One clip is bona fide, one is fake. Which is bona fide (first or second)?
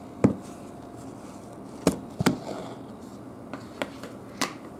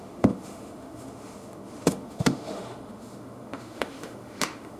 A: first